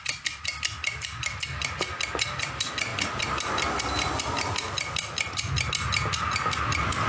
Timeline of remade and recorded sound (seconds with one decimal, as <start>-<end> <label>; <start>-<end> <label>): 0.0-7.1 recorded